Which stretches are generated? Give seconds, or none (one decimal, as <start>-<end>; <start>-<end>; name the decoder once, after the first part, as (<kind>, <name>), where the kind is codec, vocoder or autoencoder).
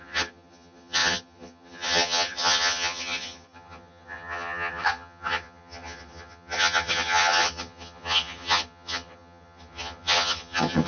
0.0-10.9 (vocoder, HiFi-GAN)